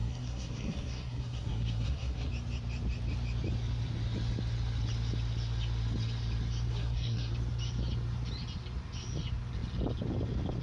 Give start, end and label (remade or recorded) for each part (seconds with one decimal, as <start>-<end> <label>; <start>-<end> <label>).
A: 0.0-2.3 remade; 2.3-6.7 recorded; 6.7-7.3 remade; 7.3-10.6 recorded